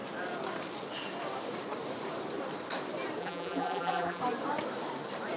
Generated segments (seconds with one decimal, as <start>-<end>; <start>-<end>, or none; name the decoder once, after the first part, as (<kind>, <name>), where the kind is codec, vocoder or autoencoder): 3.2-4.2 (vocoder, BigVGAN v2)